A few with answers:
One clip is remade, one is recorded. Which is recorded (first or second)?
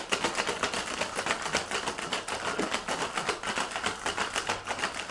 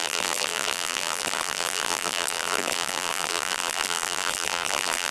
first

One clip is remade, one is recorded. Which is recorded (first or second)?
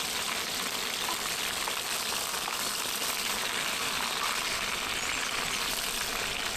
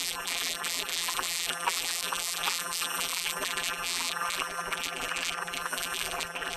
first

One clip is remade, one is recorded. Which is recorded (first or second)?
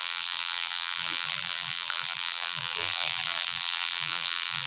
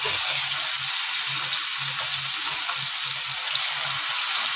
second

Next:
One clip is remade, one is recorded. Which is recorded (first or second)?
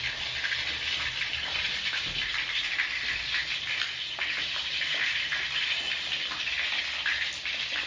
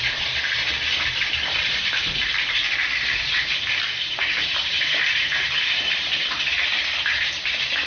first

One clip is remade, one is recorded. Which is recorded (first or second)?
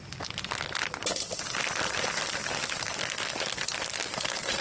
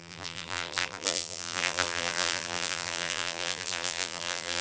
first